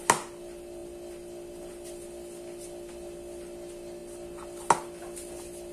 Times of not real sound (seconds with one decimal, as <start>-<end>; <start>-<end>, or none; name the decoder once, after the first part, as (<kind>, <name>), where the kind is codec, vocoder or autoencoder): none